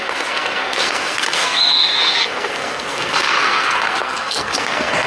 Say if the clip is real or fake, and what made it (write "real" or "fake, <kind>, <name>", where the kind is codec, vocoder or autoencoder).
fake, codec, SNAC